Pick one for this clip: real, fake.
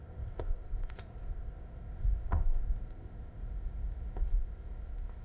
fake